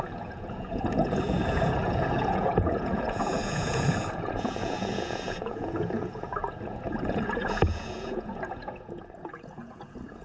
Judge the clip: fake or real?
fake